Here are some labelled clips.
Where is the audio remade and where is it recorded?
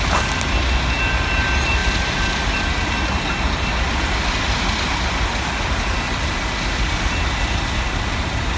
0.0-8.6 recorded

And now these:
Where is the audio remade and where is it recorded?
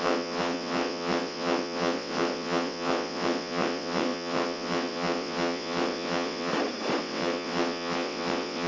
0.0-6.5 remade; 6.5-7.0 recorded; 7.0-8.7 remade